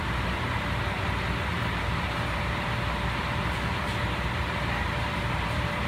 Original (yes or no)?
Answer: yes